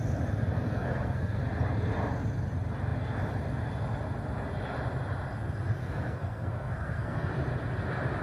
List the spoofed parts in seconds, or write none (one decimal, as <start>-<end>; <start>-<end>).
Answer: 0.7-1.4; 5.8-7.3